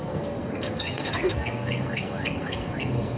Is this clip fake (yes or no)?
yes